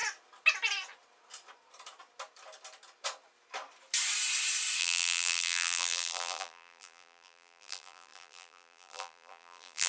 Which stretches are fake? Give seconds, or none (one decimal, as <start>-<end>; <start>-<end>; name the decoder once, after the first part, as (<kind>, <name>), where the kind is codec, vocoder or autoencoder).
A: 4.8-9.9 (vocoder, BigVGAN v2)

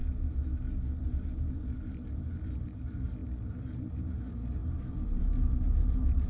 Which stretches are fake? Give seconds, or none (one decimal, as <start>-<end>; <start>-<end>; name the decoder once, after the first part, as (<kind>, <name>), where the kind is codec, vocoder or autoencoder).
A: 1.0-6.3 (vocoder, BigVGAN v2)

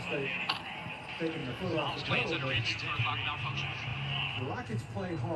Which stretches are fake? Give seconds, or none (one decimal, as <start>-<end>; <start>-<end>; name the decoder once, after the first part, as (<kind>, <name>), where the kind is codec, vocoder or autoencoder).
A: 1.4-3.0 (vocoder, BigVGAN v2)

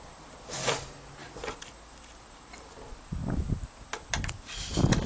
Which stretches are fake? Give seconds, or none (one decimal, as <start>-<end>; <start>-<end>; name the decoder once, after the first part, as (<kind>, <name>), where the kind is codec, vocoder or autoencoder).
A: 0.0-3.2 (vocoder, BigVGAN v2)